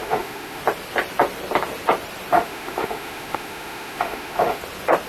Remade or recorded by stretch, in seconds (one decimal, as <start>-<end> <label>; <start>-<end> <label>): 0.0-0.6 remade; 0.6-2.3 recorded; 2.3-4.6 remade; 4.6-5.1 recorded